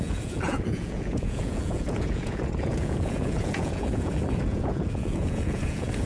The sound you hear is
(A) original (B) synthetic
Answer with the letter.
B